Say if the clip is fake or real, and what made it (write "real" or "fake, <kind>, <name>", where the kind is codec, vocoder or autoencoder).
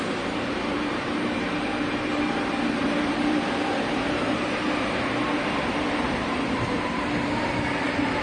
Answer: fake, vocoder, BigVGAN v2